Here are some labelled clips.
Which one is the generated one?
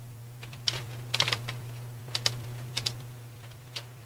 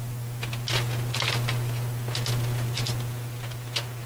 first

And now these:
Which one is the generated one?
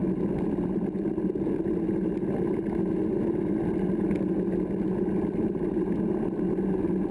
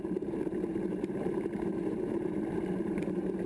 second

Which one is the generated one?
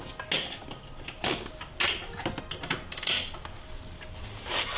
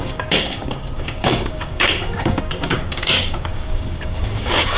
second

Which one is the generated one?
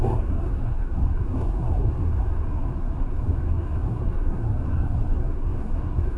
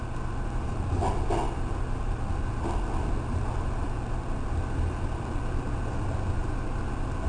first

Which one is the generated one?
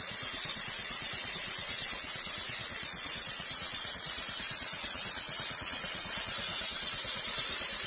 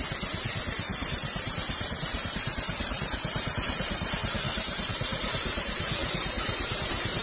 first